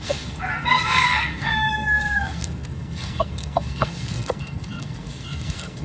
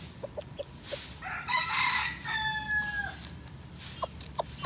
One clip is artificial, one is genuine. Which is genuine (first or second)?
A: second